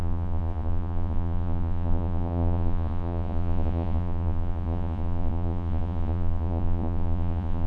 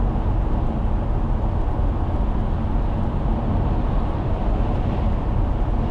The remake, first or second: first